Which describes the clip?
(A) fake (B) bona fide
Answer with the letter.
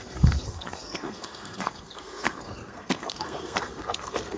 A